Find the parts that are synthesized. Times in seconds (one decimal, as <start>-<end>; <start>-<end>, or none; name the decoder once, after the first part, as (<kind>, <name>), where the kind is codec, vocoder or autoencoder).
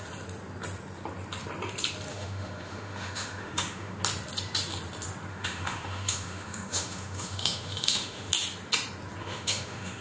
2.1-4.0 (autoencoder, DAC-VAE); 5.3-8.3; 9.2-10.0